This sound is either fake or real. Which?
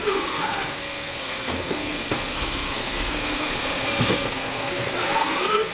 fake